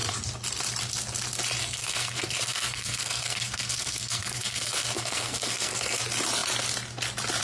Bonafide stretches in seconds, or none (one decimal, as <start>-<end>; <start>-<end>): 0.0-1.6; 6.0-7.4